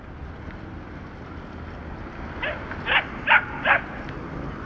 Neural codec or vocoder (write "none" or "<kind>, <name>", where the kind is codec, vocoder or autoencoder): none